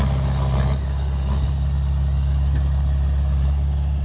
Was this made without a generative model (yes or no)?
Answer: yes